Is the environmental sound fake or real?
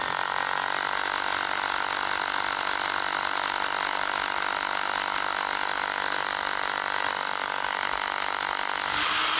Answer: real